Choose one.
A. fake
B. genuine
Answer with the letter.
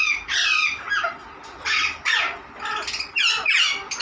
B